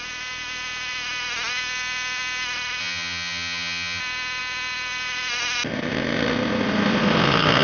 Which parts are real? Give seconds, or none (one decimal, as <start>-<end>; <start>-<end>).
0.0-2.8; 4.0-7.6